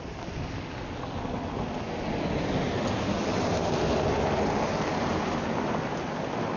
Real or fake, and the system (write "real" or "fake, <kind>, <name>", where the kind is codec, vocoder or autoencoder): real